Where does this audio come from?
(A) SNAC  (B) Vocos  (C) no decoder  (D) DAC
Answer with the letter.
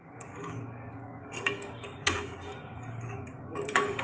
D